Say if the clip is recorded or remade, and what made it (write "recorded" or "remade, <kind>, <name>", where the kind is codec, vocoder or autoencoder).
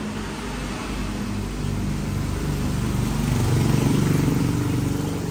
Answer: recorded